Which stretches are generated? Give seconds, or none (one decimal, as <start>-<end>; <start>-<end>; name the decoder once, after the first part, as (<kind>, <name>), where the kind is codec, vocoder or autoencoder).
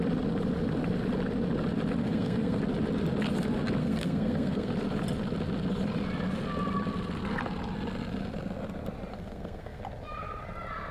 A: 2.0-2.6 (codec, SNAC); 3.8-4.7; 9.1-9.8